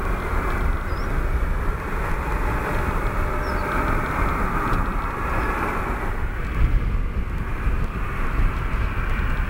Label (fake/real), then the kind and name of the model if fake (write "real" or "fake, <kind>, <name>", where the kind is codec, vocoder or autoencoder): real